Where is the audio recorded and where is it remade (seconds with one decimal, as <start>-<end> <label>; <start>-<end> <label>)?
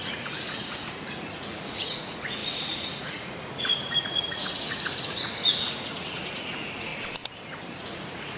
0.0-6.9 remade; 6.9-7.8 recorded; 7.8-8.4 remade